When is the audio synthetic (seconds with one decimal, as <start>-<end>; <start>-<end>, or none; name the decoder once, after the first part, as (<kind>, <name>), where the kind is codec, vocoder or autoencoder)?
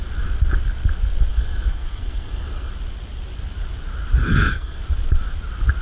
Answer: 1.3-2.7 (codec, SNAC); 4.2-4.8